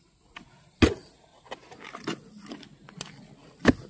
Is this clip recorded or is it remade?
recorded